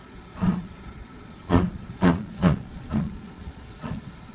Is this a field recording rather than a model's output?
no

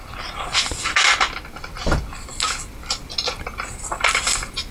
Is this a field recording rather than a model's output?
yes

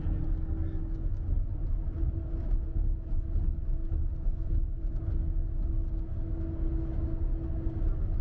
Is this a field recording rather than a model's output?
yes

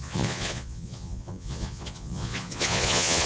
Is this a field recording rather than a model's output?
no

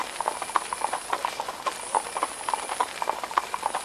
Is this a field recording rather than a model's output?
yes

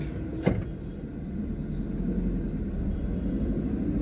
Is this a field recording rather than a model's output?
yes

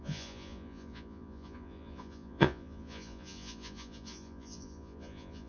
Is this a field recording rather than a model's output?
no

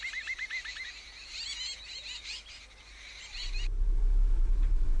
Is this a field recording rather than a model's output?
yes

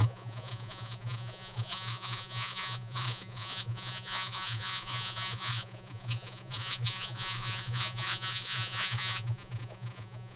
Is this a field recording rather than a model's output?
no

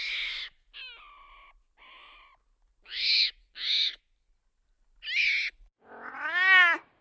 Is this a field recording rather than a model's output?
yes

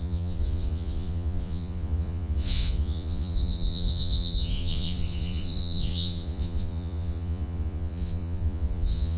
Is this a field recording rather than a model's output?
no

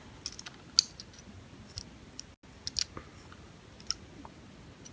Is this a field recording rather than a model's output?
yes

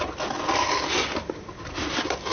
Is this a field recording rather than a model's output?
yes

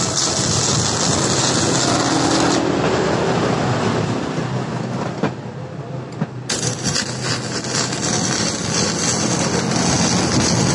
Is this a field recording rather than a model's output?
yes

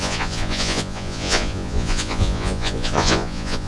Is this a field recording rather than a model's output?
no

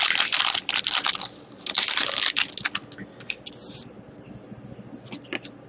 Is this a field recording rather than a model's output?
yes